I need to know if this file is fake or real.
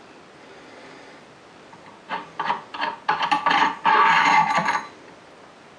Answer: real